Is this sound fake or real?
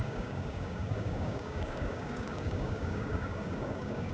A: fake